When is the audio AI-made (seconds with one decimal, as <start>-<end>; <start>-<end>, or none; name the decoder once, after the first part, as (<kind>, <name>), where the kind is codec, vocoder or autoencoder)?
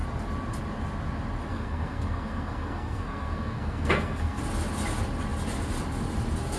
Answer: 1.5-4.4 (codec, SNAC)